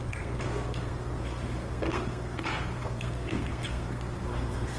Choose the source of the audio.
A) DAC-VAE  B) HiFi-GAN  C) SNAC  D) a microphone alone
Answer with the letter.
C